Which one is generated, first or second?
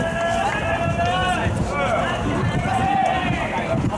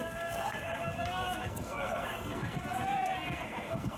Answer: second